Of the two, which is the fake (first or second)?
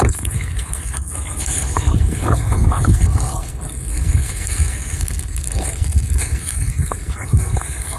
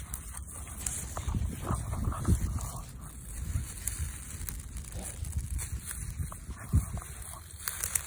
first